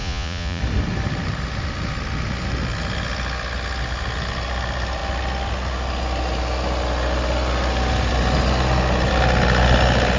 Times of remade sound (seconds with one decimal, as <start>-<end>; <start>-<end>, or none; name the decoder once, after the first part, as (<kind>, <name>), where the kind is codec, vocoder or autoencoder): 0.0-0.6 (vocoder, Vocos)

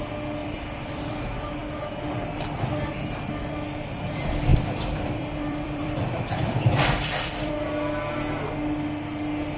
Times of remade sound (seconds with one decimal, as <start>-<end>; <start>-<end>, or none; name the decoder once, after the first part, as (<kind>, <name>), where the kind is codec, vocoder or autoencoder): 0.4-1.1 (vocoder, BigVGAN v2); 4.5-7.5

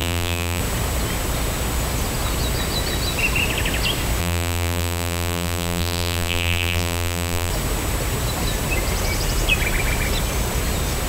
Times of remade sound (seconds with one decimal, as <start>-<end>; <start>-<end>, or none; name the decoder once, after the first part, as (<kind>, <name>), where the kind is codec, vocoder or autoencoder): 0.0-0.6 (vocoder, BigVGAN v2); 4.2-7.5